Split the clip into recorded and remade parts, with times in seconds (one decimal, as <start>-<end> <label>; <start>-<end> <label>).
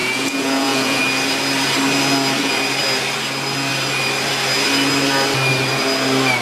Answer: 0.0-1.0 remade; 1.0-6.4 recorded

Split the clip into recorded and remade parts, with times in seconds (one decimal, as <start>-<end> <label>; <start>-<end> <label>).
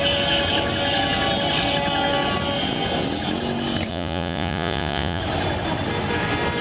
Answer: 0.0-3.9 recorded; 3.9-5.2 remade; 5.2-6.6 recorded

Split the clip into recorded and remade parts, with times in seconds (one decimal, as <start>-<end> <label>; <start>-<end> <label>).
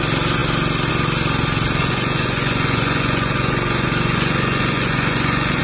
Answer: 0.0-1.8 recorded; 1.8-5.6 remade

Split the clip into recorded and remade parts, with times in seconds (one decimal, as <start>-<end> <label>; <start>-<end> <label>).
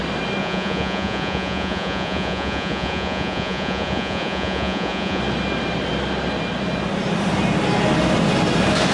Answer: 0.0-0.4 recorded; 0.4-5.2 remade; 5.2-8.9 recorded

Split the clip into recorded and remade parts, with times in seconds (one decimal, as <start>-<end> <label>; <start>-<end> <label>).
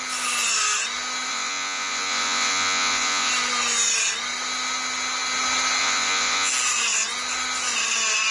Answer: 0.0-1.3 recorded; 1.3-3.3 remade; 3.3-5.8 recorded; 5.8-6.5 remade; 6.5-8.3 recorded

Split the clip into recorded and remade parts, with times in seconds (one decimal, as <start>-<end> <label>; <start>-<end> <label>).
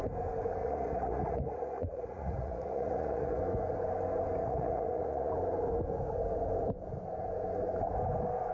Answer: 0.0-0.6 recorded; 0.6-3.4 remade; 3.4-4.4 recorded; 4.4-5.3 remade; 5.3-8.5 recorded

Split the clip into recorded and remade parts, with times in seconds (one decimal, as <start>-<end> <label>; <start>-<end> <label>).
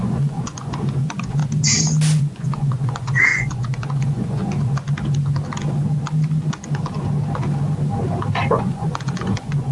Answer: 0.0-1.4 remade; 1.4-2.2 recorded; 2.2-4.4 remade; 4.4-8.5 recorded; 8.5-9.7 remade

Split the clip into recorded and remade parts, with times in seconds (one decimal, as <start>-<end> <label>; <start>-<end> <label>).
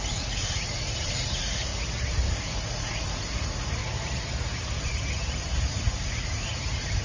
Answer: 0.0-1.7 remade; 1.7-2.3 recorded; 2.3-3.8 remade; 3.8-4.8 recorded; 4.8-7.0 remade